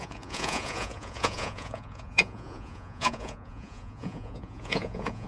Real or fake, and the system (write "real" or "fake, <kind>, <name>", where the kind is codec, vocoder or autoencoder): fake, vocoder, Vocos